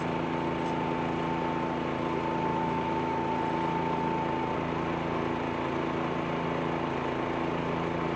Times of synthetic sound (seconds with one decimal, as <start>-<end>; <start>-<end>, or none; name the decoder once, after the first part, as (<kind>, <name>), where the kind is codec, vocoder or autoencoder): 2.5-3.2 (autoencoder, DAC-VAE)